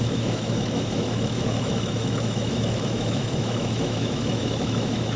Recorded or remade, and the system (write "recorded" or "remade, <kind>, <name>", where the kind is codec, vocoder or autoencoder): remade, autoencoder, DAC-VAE